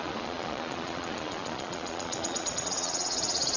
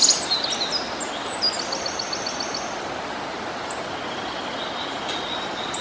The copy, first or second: first